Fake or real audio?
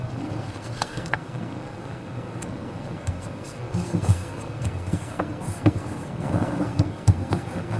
fake